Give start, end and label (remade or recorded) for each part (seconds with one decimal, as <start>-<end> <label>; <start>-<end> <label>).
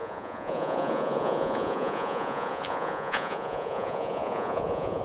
0.0-5.0 remade